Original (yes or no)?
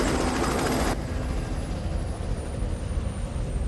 yes